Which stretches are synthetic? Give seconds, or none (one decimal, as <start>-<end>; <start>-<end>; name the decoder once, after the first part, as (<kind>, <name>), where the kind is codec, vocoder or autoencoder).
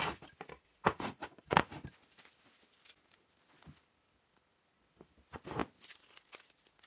0.9-1.7 (vocoder, Vocos)